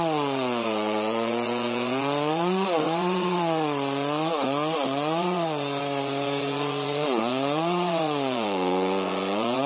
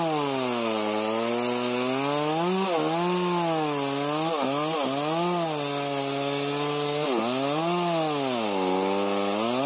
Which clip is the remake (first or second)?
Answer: first